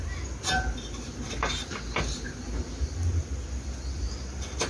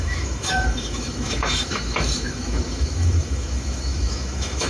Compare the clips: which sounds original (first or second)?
first